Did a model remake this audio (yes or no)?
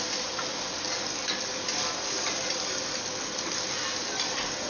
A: no